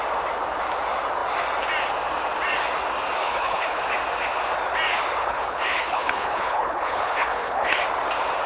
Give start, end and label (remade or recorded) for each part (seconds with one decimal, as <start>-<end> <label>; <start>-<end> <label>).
0.0-3.2 recorded; 3.2-3.8 remade; 3.8-5.2 recorded; 5.2-7.8 remade; 7.8-8.5 recorded

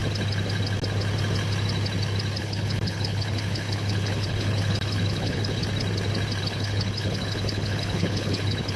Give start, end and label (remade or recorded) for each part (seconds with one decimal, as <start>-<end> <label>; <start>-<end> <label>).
0.0-2.4 recorded; 2.4-5.6 remade; 5.6-6.4 recorded; 6.4-8.8 remade

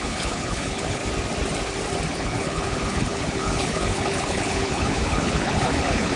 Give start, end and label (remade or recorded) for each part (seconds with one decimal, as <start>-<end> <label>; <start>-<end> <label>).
0.0-1.0 remade; 1.0-2.1 recorded; 2.1-6.2 remade

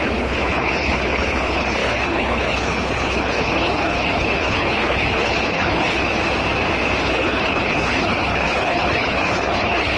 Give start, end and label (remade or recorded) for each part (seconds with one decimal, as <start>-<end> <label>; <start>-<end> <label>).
0.0-6.2 remade; 6.2-7.0 recorded; 7.0-10.0 remade

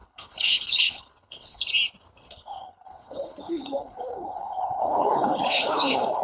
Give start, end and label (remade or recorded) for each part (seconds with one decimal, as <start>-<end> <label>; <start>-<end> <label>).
0.0-1.6 remade; 1.6-2.2 recorded; 2.2-6.2 remade

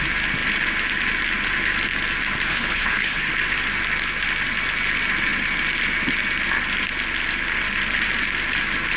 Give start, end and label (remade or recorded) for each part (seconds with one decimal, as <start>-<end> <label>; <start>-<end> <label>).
0.0-2.5 recorded; 2.5-3.3 remade; 3.3-9.0 recorded

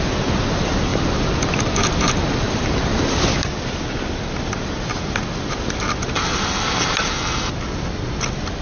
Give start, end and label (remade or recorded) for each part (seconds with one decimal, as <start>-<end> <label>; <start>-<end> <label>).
0.0-8.6 recorded